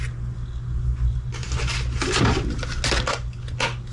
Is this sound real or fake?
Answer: real